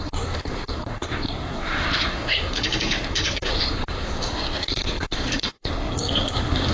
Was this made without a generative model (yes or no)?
no